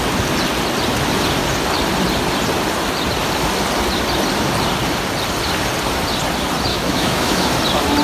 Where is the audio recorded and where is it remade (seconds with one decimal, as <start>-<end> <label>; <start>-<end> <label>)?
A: 0.0-6.7 recorded; 6.7-7.5 remade; 7.5-8.0 recorded